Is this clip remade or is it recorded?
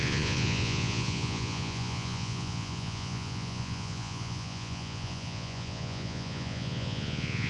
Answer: remade